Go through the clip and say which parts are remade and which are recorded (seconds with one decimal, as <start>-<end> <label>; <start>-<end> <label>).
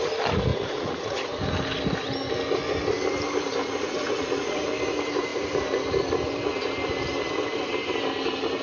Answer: 0.0-0.5 recorded; 0.5-1.4 remade; 1.4-3.6 recorded; 3.6-4.7 remade; 4.7-8.6 recorded